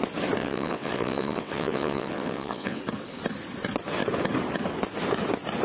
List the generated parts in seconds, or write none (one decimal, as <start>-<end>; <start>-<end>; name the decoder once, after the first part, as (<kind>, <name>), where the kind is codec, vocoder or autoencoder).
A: 0.4-2.8 (vocoder, WaveNeXt)